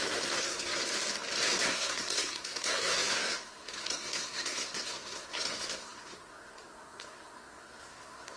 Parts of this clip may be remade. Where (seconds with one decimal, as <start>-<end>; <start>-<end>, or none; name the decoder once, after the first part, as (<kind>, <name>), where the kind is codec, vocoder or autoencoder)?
0.0-0.7 (codec, SNAC); 1.5-8.4